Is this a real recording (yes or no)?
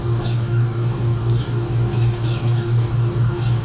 no